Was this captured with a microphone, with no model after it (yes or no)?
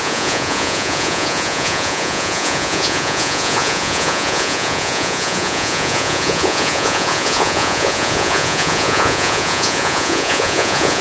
no